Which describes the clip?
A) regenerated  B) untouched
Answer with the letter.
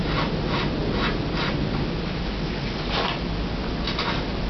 B